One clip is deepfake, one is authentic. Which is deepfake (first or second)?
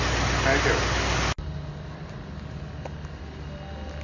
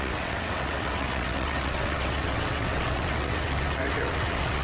second